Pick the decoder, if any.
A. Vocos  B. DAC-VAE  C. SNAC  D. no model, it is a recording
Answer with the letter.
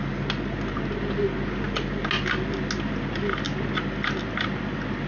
D